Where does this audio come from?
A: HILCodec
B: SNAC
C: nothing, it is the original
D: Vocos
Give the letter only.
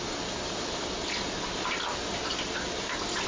C